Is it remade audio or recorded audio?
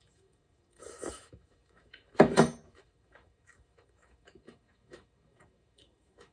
remade